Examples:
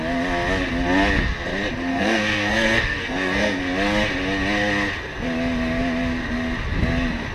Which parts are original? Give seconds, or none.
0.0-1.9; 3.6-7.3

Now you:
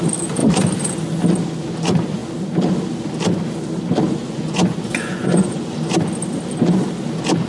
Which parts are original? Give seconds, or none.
0.0-4.2; 5.9-7.5

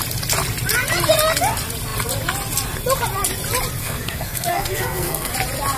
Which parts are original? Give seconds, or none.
0.0-3.8; 5.3-5.8